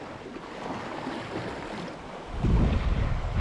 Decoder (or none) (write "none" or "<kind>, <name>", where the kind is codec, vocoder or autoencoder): none